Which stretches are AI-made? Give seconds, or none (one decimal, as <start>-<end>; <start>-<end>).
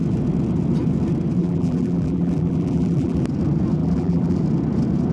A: 1.4-3.2; 3.8-4.4